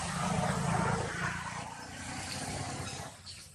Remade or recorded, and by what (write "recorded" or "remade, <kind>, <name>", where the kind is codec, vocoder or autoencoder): recorded